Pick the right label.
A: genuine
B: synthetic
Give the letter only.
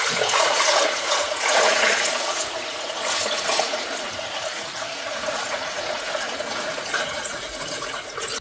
B